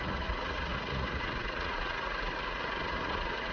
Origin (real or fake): fake